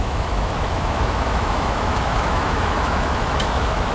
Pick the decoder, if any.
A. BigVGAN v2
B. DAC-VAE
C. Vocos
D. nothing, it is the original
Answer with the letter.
B